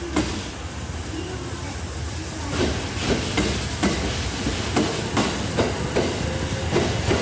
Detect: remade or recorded recorded